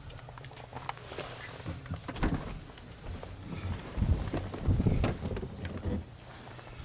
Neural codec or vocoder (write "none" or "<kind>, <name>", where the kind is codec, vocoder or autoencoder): none